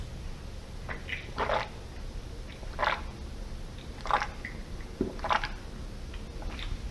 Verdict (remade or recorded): recorded